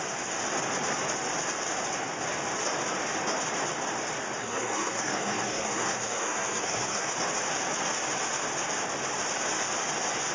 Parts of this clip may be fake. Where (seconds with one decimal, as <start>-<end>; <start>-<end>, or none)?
4.4-7.1